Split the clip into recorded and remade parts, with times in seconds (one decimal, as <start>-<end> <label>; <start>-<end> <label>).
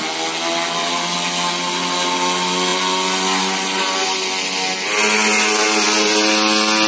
0.0-6.9 recorded